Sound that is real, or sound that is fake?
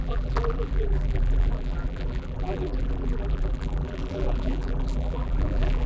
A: fake